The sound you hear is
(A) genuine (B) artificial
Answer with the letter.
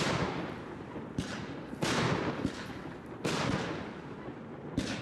A